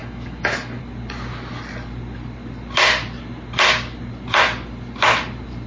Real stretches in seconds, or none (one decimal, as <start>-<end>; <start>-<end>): 0.8-5.7